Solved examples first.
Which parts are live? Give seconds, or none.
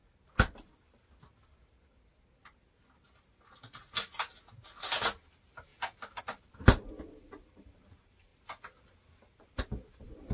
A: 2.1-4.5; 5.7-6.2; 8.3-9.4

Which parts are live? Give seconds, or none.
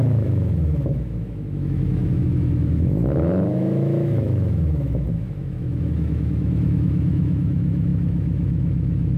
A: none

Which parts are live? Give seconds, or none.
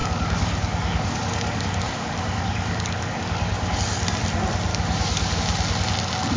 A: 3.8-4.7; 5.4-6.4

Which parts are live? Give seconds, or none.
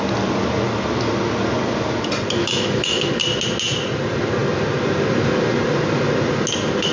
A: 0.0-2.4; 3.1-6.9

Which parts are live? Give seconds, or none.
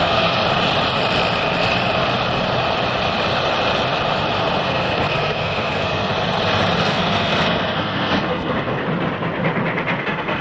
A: 0.4-4.6; 6.1-6.8; 8.8-10.0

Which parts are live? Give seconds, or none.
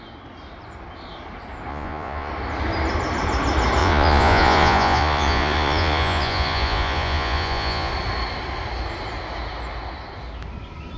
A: 0.0-1.7; 2.3-3.8; 7.9-11.0